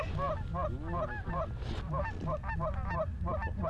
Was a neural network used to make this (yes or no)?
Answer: no